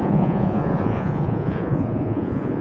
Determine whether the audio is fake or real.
fake